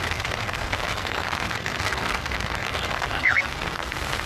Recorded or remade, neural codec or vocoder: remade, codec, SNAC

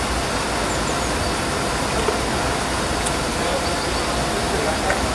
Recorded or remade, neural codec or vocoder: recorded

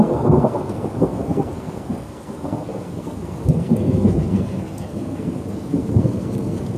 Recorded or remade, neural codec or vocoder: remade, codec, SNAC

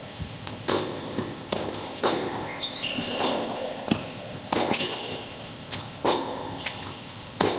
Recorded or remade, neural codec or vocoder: remade, codec, ZipCodec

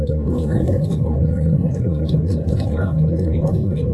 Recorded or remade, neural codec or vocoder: remade, codec, SNAC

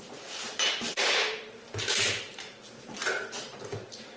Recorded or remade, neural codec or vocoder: remade, vocoder, BigVGAN v2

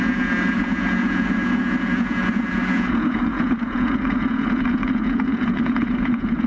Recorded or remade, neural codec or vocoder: remade, vocoder, Vocos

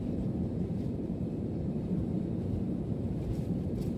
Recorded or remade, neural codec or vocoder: remade, vocoder, BigVGAN v2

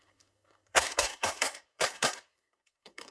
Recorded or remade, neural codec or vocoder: remade, codec, SNAC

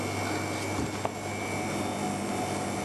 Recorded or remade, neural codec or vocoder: recorded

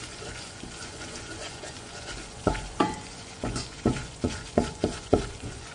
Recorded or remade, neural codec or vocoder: remade, vocoder, Vocos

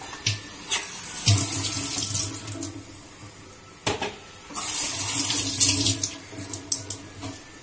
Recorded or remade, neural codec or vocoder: recorded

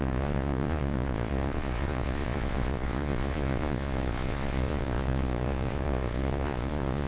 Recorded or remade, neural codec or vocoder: remade, vocoder, Vocos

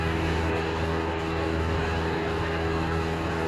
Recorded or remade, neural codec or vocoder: remade, codec, DAC